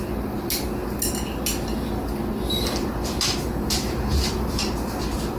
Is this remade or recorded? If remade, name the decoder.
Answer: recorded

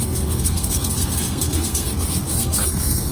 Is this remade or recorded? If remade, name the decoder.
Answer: remade, codec, SNAC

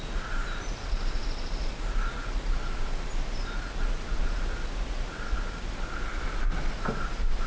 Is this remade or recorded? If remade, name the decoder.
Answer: recorded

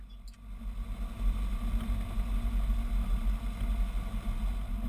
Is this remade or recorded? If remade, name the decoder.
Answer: recorded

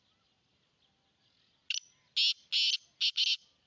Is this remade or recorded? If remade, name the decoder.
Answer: recorded